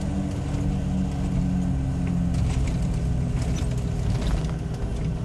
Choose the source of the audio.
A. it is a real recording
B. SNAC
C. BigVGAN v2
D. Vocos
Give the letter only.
A